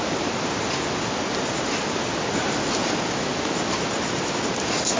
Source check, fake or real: real